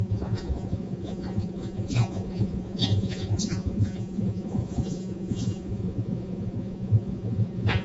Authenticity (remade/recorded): remade